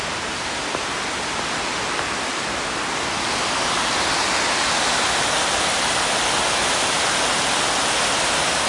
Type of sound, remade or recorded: recorded